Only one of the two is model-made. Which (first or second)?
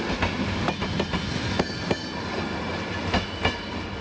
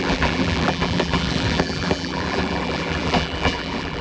second